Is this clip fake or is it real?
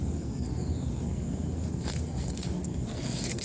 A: fake